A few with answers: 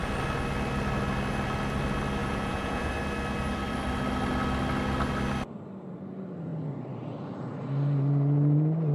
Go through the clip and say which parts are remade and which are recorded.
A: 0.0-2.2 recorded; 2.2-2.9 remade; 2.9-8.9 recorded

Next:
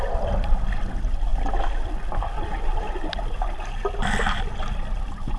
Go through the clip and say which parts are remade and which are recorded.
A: 0.0-5.4 recorded

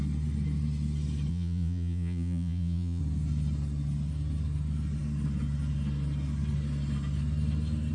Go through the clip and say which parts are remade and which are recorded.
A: 0.0-1.3 recorded; 1.3-3.0 remade; 3.0-7.9 recorded

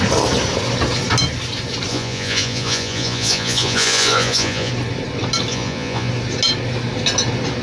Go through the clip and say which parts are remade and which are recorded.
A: 0.0-1.9 recorded; 1.9-4.7 remade; 4.7-5.5 recorded; 5.5-6.1 remade; 6.1-7.6 recorded

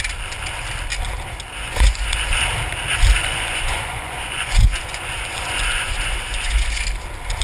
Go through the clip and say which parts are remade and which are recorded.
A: 0.0-1.5 recorded; 1.5-2.3 remade; 2.3-3.2 recorded; 3.2-6.8 remade; 6.8-7.4 recorded